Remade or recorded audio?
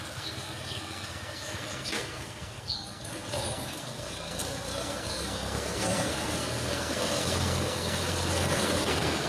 remade